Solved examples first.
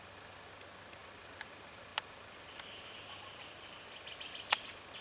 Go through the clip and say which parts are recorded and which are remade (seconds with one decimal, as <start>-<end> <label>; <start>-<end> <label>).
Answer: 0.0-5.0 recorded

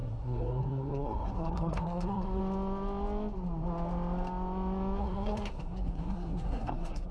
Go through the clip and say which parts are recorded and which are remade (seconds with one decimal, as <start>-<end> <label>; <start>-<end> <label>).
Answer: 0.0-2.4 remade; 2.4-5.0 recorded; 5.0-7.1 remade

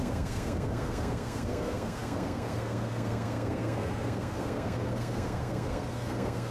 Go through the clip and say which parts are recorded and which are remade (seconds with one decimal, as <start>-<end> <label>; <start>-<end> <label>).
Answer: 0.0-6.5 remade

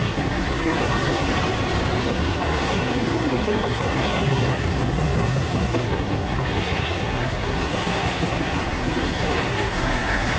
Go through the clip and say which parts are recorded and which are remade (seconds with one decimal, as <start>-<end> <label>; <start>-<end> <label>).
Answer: 0.0-1.3 remade; 1.3-2.0 recorded; 2.0-10.4 remade